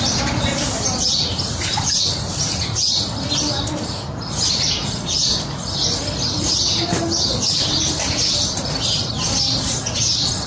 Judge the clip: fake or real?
real